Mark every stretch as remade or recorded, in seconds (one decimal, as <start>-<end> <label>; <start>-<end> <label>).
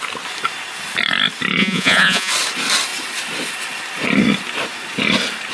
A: 0.0-1.6 recorded; 1.6-2.3 remade; 2.3-5.5 recorded